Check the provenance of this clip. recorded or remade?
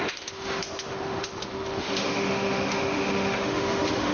remade